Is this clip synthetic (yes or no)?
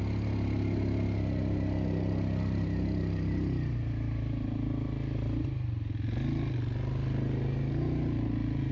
no